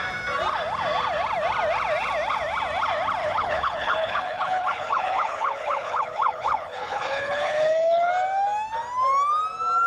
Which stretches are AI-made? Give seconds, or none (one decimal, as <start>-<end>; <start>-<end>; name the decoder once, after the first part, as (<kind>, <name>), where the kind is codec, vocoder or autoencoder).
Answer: 3.2-8.1 (codec, HILCodec)